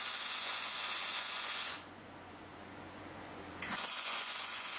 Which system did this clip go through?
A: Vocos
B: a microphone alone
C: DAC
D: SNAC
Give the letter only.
A